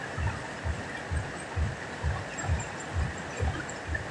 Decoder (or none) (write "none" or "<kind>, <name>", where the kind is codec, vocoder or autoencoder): none